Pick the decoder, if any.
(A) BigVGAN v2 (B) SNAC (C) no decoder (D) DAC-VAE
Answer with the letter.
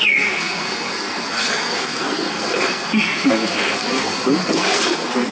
B